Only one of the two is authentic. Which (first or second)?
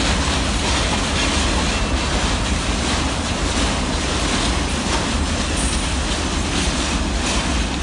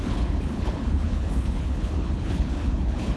first